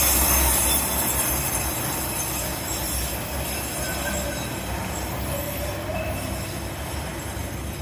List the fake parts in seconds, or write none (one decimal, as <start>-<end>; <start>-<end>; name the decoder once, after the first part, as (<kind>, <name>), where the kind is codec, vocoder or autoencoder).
none